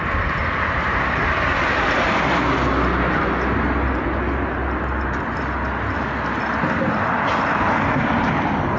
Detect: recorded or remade recorded